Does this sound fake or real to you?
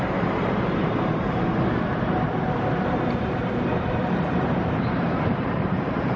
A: fake